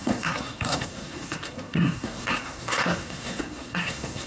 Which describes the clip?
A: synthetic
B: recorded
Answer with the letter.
A